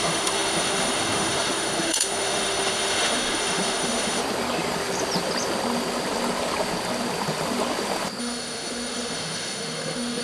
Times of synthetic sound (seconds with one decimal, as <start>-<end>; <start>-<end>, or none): 0.0-4.2; 8.2-10.2